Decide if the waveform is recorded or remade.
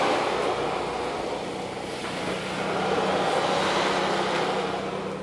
recorded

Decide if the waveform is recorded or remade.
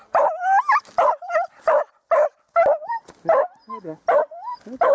recorded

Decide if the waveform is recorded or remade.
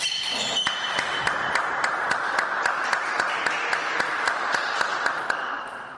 recorded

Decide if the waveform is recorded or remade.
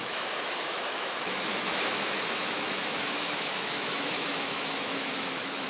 remade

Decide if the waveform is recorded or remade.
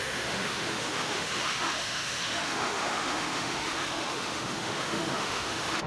remade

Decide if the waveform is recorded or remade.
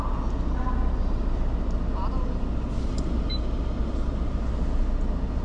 recorded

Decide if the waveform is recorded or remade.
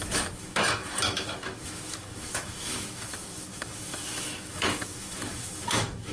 remade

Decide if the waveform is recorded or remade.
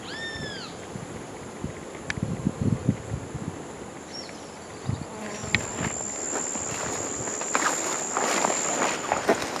recorded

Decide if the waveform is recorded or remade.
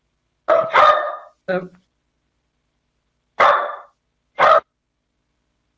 recorded